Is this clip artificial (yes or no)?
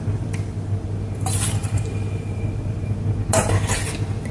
no